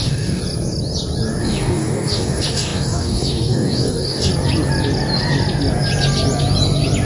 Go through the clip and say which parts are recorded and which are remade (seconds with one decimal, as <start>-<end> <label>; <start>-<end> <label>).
0.0-0.4 remade; 0.4-1.4 recorded; 1.4-4.3 remade; 4.3-7.1 recorded